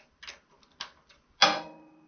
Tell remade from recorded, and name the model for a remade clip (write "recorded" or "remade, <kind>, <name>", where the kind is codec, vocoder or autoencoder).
recorded